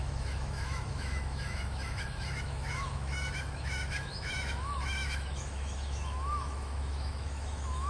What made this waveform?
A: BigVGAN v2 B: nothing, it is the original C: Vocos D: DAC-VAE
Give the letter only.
D